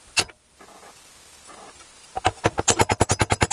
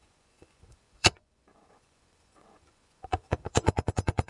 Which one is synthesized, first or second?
second